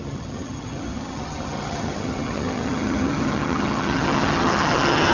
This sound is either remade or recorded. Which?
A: remade